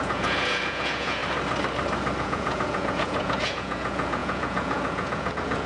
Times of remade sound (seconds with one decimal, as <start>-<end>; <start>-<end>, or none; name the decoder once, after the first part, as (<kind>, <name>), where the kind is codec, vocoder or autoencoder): 0.0-1.2 (vocoder, Vocos); 2.2-5.7